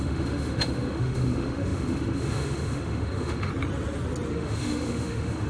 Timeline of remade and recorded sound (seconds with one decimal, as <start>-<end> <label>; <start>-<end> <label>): 0.0-3.5 remade; 3.5-4.3 recorded; 4.3-5.5 remade